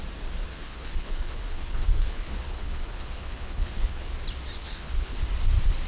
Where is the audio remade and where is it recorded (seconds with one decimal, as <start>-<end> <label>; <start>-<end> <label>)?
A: 0.0-0.5 recorded; 0.5-4.0 remade; 4.0-4.6 recorded; 4.6-5.2 remade; 5.2-5.9 recorded